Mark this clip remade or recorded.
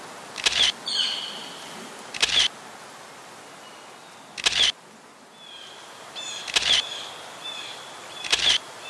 recorded